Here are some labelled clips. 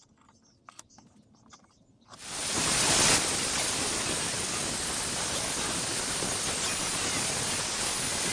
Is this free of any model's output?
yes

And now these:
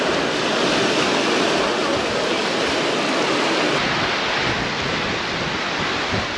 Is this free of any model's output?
yes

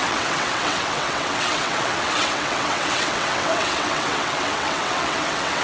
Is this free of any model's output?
no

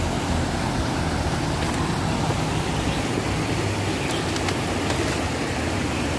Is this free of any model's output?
yes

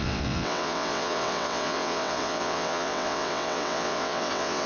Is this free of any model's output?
no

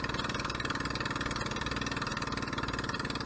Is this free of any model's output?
yes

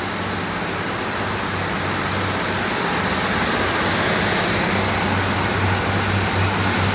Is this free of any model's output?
yes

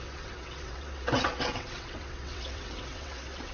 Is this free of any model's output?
no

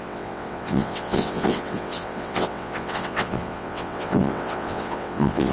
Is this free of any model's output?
no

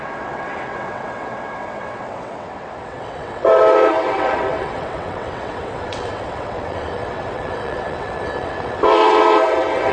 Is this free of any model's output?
no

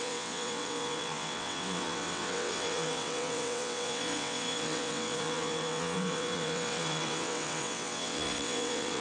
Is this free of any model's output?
no